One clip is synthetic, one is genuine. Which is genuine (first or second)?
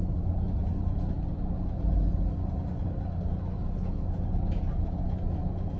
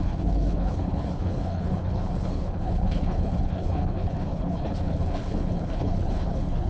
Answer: first